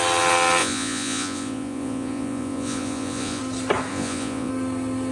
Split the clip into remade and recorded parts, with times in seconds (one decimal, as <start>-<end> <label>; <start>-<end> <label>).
0.0-0.6 recorded; 0.6-3.4 remade; 3.4-3.9 recorded; 3.9-4.5 remade; 4.5-5.1 recorded